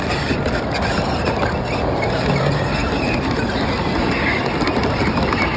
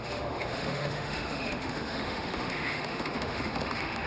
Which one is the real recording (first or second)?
first